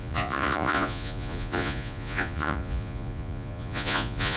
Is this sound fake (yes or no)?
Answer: yes